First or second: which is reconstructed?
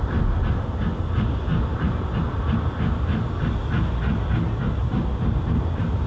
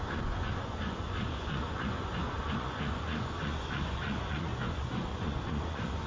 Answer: second